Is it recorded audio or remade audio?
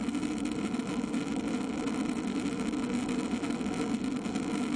recorded